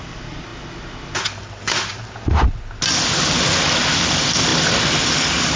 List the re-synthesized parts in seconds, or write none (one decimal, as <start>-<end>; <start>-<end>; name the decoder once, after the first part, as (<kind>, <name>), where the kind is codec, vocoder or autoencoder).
0.0-0.5 (vocoder, BigVGAN v2); 3.9-4.5; 5.0-5.6